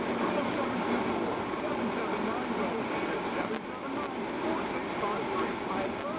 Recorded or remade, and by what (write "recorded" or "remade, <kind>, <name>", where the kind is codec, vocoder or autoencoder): recorded